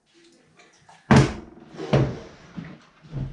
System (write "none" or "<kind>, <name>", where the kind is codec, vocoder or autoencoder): none